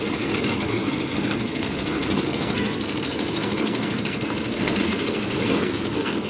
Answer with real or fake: fake